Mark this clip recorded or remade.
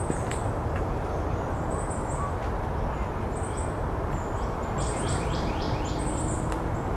recorded